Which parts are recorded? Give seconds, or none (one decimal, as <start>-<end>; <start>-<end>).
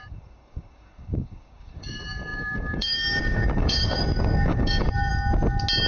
5.1-5.9